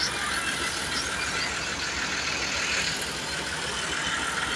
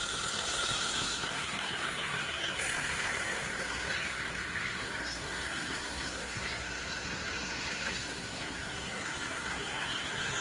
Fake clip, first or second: second